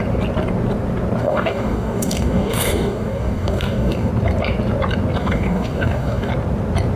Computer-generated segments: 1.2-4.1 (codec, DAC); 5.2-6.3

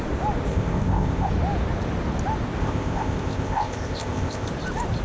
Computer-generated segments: 0.5-1.3 (codec, ZipCodec); 2.6-4.5

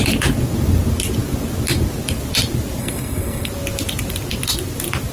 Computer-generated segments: 2.8-3.5 (codec, SNAC)

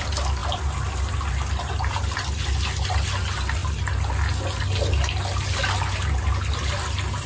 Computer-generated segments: none

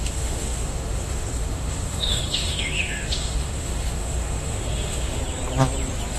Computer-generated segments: 0.0-5.2 (autoencoder, DAC-VAE)

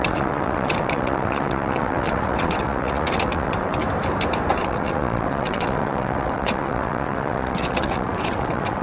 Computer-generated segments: 0.0-3.8 (vocoder, WaveNeXt); 4.5-8.8

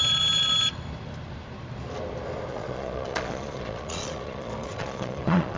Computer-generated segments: 2.5-5.6 (vocoder, Vocos)